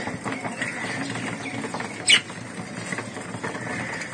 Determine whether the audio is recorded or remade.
recorded